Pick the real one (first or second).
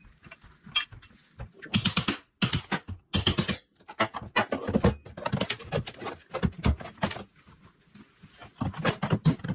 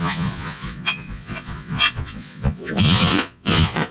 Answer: first